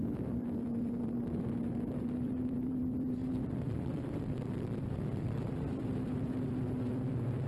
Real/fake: fake